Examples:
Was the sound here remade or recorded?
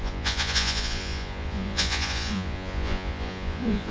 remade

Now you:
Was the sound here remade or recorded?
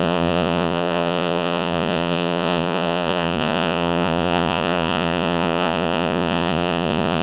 remade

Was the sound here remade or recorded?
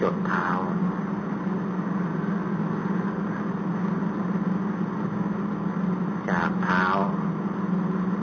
recorded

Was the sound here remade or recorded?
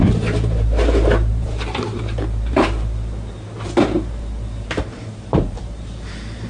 remade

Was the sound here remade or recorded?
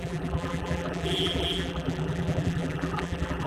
remade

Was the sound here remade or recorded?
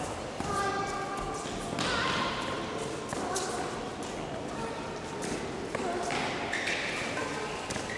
recorded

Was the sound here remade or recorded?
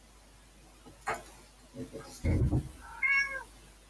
recorded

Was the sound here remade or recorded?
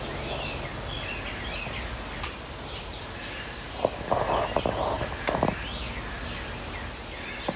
recorded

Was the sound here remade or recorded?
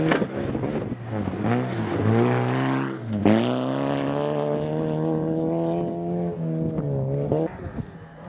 recorded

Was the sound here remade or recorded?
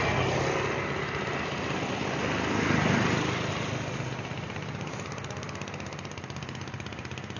recorded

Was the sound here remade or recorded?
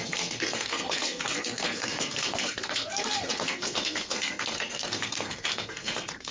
remade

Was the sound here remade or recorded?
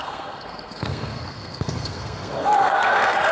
remade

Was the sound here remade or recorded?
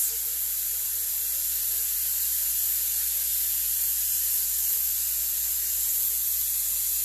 recorded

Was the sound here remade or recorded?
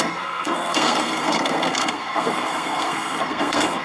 remade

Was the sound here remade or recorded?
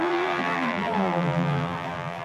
remade